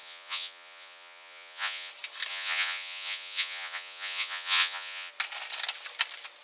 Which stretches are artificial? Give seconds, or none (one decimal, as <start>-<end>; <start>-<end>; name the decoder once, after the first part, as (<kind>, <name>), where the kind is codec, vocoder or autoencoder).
0.0-1.9 (vocoder, Vocos); 2.3-5.1